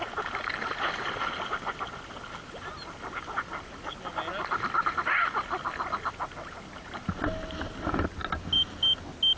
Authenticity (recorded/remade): recorded